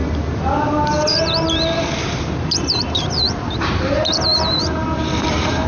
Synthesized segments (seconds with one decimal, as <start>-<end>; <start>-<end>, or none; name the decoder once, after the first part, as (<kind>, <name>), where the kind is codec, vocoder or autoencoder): 0.0-5.7 (vocoder, BigVGAN v2)